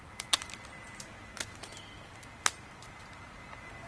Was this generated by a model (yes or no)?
no